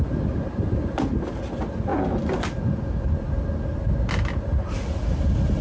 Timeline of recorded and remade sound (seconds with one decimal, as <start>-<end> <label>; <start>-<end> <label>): 0.0-5.6 recorded

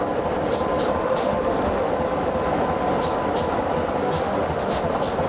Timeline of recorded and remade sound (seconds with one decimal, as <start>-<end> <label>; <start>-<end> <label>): 0.0-1.0 recorded; 1.0-1.9 remade; 1.9-4.0 recorded; 4.0-4.8 remade; 4.8-5.3 recorded

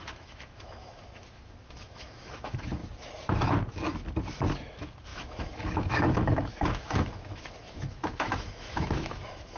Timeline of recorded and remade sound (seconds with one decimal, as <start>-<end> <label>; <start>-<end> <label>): 0.0-2.8 remade; 2.8-4.6 recorded; 4.6-9.6 remade